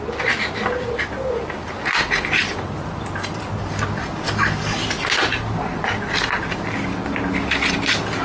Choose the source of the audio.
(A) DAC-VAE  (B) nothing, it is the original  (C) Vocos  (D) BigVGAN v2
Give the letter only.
B